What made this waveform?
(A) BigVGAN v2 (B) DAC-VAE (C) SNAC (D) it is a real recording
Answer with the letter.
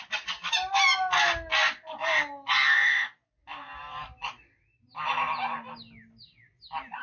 D